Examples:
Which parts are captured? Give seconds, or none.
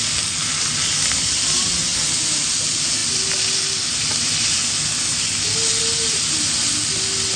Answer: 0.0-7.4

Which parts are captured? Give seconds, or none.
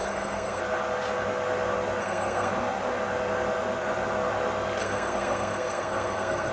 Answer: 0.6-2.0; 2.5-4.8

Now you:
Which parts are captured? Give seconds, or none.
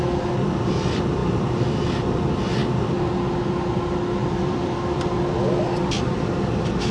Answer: 0.0-1.2; 1.8-4.2; 4.8-6.9